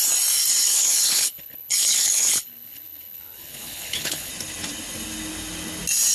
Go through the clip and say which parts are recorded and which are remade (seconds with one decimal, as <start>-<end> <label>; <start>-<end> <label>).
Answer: 0.0-0.6 recorded; 0.6-4.3 remade; 4.3-6.1 recorded